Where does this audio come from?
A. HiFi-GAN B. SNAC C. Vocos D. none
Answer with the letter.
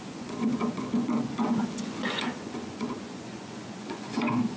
C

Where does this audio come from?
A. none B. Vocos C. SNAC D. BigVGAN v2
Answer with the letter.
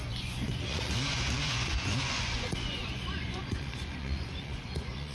B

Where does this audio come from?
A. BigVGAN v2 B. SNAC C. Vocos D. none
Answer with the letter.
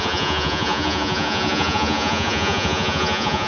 C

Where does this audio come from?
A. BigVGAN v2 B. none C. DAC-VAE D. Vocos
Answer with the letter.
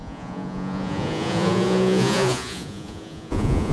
D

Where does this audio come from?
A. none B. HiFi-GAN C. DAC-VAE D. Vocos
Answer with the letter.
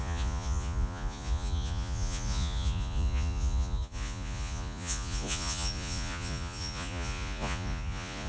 D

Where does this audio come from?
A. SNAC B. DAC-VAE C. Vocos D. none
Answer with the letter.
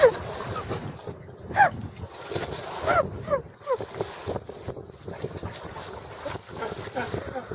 D